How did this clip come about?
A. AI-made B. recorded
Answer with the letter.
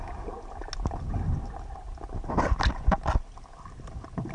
B